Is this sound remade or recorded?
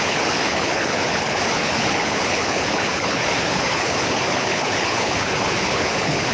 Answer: remade